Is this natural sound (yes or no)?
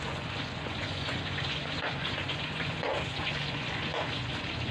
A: no